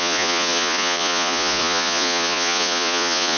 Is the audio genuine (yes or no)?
no